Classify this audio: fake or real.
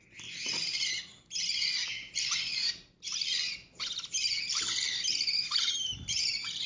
real